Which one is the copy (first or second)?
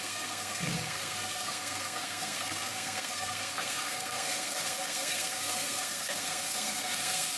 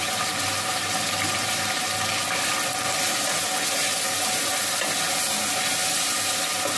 first